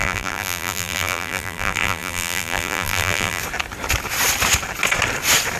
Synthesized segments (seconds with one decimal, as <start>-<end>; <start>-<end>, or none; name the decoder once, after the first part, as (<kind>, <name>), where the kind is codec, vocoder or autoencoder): 0.0-3.4 (vocoder, BigVGAN v2)